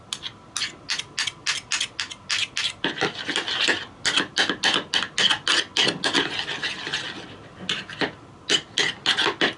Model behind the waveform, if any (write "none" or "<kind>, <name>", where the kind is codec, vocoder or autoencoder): none